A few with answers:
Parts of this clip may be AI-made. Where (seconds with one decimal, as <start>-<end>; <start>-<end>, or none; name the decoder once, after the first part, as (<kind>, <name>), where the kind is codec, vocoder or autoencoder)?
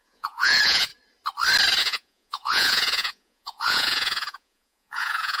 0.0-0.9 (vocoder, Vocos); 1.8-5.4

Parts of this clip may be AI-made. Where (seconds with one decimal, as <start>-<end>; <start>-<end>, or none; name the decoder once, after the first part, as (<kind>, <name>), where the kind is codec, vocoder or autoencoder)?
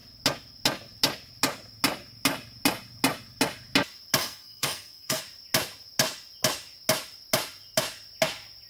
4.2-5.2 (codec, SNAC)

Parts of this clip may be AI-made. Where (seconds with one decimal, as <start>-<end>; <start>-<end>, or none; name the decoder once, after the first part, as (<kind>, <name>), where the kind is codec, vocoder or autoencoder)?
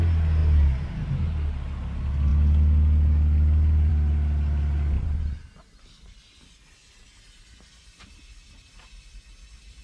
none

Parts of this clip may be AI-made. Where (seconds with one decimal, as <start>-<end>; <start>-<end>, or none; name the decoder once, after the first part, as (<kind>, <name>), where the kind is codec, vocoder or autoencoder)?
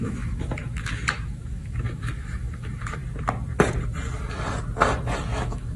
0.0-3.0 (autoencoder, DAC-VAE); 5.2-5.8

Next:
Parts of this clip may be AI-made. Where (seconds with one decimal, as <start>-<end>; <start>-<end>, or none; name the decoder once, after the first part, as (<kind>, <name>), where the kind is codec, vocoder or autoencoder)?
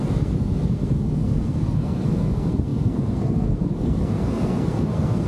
0.0-5.3 (codec, SNAC)